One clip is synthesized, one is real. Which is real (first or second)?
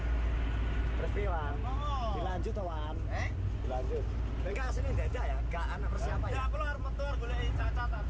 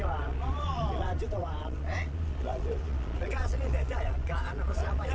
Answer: first